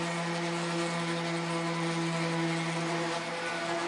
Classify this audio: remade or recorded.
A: recorded